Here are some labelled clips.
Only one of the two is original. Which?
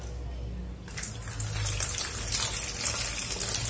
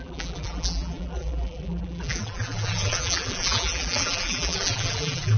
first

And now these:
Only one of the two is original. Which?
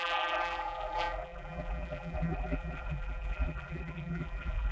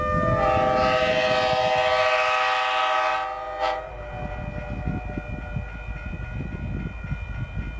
second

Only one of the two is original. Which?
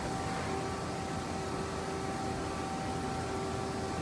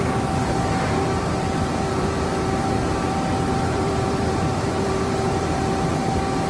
first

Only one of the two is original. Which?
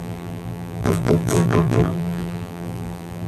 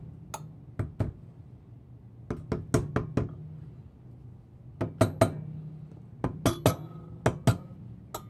second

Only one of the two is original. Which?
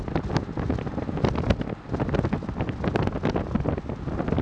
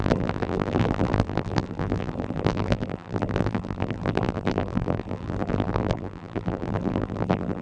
first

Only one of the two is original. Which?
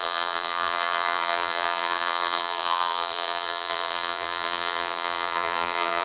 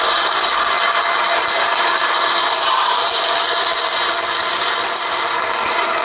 second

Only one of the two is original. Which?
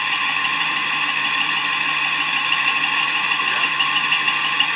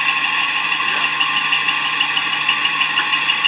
second